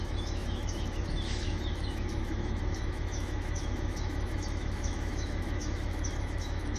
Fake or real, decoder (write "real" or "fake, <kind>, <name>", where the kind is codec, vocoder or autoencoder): fake, autoencoder, DAC-VAE